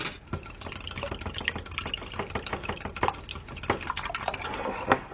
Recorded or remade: recorded